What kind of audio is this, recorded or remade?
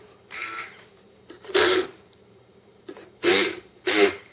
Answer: remade